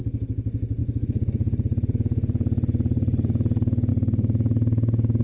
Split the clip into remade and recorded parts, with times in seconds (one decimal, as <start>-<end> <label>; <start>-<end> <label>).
0.0-5.2 recorded